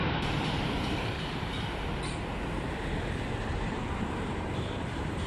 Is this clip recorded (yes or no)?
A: no